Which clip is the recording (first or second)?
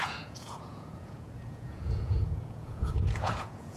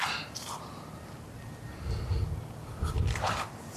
second